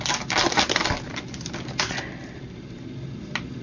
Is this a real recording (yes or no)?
yes